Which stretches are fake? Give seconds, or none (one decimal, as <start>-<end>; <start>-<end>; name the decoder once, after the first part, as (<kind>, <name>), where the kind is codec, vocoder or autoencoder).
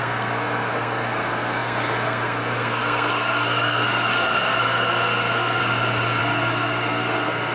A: 0.0-5.6 (codec, SNAC); 6.2-7.5